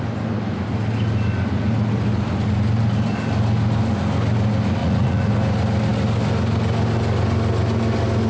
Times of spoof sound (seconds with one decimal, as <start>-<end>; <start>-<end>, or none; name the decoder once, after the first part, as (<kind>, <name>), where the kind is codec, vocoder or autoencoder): 4.8-5.3 (vocoder, Vocos)